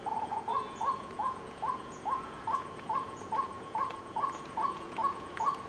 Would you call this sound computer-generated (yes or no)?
yes